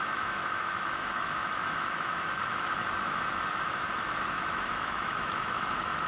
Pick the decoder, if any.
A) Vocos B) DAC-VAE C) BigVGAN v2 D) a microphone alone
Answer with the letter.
B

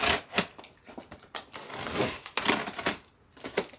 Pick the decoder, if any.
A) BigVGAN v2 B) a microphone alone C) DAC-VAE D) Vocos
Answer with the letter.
B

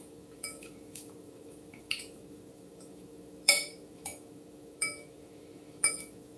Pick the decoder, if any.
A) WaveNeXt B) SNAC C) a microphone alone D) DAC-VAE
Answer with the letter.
D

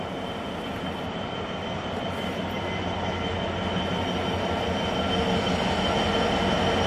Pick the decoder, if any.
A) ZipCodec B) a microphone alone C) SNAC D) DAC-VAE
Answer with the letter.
B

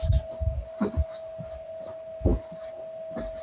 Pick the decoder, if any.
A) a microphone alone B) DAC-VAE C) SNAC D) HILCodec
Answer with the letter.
A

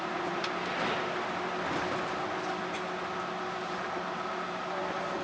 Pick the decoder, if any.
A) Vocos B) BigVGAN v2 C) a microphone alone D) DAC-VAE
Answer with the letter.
C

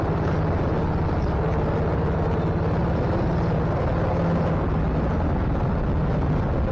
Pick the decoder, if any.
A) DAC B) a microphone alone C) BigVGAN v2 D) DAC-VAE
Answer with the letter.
B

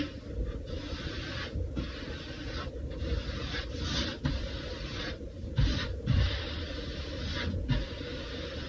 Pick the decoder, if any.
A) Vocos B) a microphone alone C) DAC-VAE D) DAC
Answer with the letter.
B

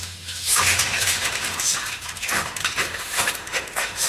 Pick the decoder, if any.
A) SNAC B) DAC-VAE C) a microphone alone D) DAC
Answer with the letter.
B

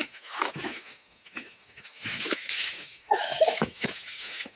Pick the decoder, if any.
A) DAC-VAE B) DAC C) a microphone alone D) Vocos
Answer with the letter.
A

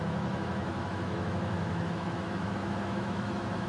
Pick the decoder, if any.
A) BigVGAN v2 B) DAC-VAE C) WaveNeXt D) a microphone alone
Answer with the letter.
B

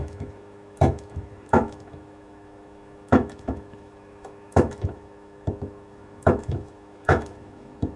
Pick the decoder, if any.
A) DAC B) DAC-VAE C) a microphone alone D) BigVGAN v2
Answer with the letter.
B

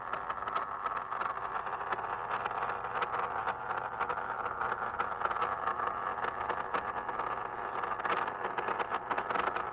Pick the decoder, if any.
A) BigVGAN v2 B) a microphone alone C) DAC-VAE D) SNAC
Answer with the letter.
B